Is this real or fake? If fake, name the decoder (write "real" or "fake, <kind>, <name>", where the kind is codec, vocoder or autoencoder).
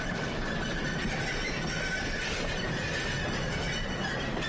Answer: real